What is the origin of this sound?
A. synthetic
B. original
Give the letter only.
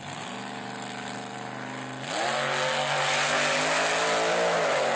B